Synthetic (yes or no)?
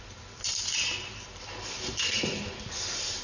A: no